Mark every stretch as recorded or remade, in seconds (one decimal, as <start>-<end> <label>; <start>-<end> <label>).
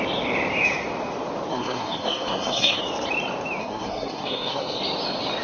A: 0.0-1.5 recorded; 1.5-2.8 remade; 2.8-3.6 recorded; 3.6-4.8 remade; 4.8-5.4 recorded